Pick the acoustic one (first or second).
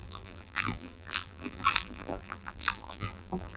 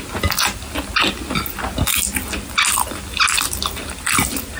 second